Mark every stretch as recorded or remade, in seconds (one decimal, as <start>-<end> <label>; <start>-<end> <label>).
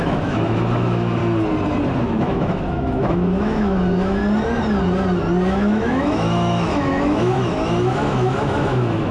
0.0-1.2 remade; 1.2-2.0 recorded; 2.0-4.2 remade; 4.2-5.5 recorded; 5.5-9.1 remade